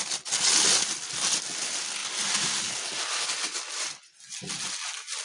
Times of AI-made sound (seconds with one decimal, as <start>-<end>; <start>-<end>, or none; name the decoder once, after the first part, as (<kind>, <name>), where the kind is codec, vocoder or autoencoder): none